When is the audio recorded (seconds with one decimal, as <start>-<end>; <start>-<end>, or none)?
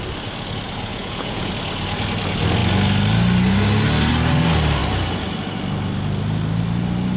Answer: 0.0-0.9; 1.5-7.2